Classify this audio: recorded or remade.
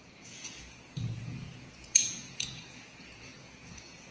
remade